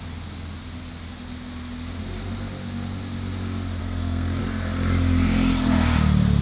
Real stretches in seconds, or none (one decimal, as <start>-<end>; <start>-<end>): 0.0-3.8; 4.4-6.4